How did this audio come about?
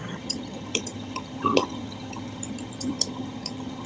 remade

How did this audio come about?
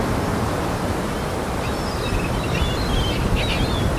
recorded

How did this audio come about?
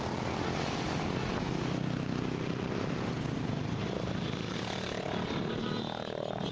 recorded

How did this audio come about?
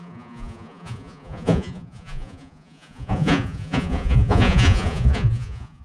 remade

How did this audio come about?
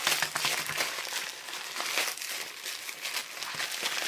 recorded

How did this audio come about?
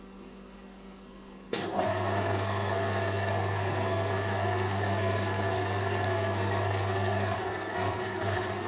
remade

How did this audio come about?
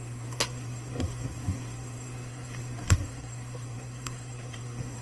remade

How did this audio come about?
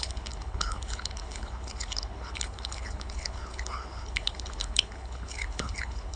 remade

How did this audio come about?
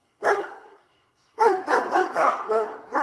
remade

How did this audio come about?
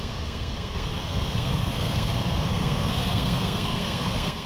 remade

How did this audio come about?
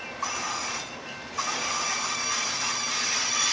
recorded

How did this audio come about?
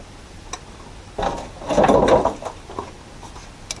recorded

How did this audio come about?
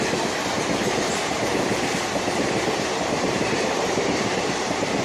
remade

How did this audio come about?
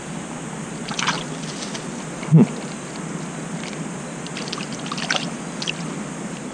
recorded